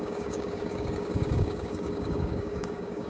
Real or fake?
fake